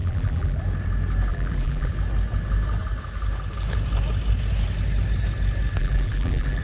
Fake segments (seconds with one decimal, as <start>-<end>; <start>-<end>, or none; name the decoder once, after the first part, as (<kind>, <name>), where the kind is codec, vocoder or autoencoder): 0.0-0.6 (vocoder, BigVGAN v2); 1.3-1.9; 5.8-6.6